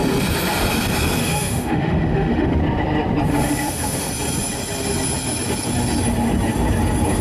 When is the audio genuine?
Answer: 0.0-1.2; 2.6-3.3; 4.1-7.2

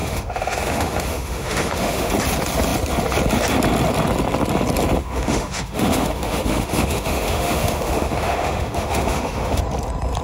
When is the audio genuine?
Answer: 2.1-5.0; 9.6-10.2